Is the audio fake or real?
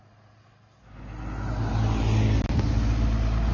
real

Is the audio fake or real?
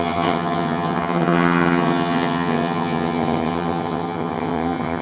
fake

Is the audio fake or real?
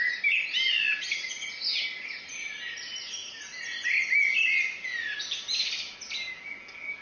real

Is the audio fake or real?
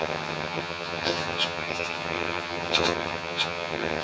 fake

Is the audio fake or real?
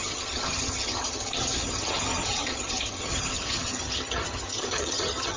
fake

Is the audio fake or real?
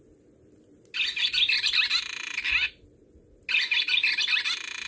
real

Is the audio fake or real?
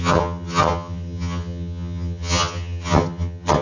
fake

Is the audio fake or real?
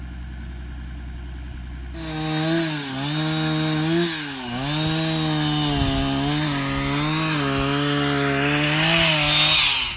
real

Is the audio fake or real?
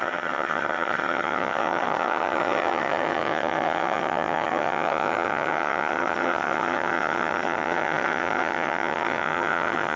fake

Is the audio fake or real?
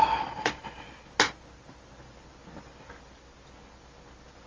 real